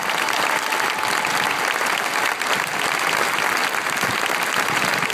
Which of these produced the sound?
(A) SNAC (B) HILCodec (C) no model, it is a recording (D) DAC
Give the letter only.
C